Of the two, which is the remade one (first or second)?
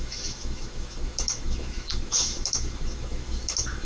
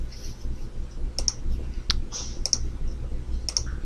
first